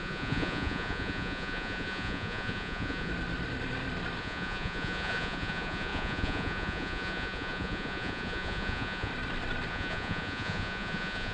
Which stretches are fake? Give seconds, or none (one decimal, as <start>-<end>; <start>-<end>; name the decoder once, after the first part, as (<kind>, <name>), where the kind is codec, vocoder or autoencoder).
0.0-3.1 (vocoder, Vocos); 4.2-9.1; 9.7-11.3